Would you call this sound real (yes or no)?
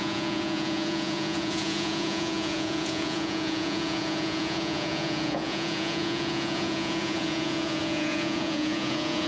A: no